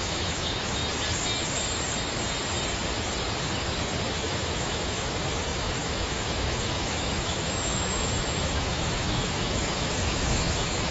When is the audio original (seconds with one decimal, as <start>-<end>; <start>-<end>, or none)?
0.8-4.1

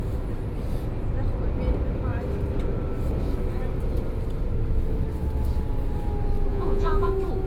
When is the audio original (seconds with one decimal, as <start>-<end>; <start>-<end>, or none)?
0.0-6.5; 7.1-7.5

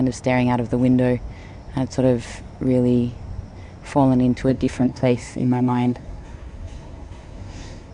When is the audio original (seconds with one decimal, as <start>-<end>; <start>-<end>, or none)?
0.0-4.5